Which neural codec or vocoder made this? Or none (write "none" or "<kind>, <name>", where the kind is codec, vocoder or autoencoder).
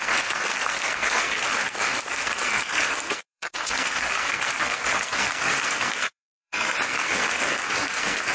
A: codec, SNAC